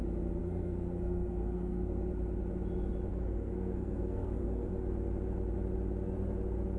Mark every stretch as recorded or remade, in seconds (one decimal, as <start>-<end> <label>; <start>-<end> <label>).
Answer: 0.0-0.4 recorded; 0.4-2.1 remade; 2.1-3.1 recorded; 3.1-4.7 remade; 4.7-6.8 recorded